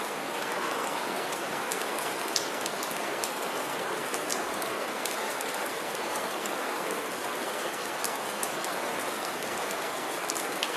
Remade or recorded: remade